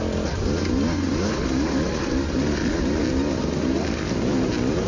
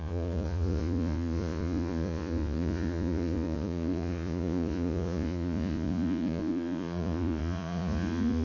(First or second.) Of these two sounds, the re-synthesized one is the second